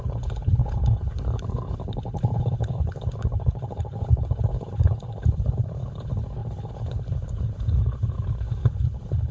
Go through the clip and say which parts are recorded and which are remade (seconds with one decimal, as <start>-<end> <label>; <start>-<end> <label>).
0.0-9.3 remade